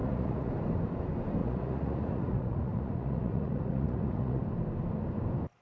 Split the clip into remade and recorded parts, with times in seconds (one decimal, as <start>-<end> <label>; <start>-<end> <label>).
0.0-0.5 remade; 0.5-1.4 recorded; 1.4-4.4 remade; 4.4-5.6 recorded